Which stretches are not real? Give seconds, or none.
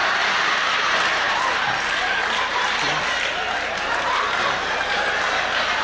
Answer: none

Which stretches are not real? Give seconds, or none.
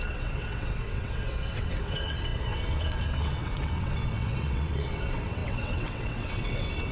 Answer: 0.0-6.9 (vocoder, WaveNeXt)